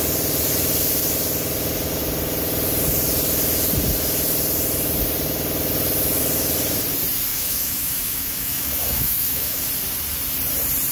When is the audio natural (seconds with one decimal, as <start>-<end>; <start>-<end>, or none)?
0.0-7.3; 9.6-10.9